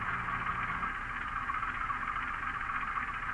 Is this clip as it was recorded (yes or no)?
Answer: yes